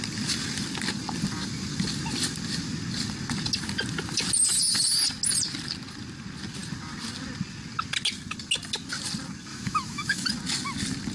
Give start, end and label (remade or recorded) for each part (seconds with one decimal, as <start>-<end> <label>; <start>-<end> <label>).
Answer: 0.0-9.5 recorded; 9.5-10.3 remade; 10.3-11.1 recorded